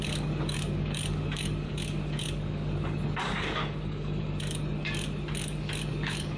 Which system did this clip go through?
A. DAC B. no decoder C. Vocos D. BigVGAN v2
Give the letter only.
A